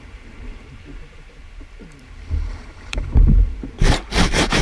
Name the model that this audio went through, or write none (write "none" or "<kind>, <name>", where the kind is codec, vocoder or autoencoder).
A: vocoder, BigVGAN v2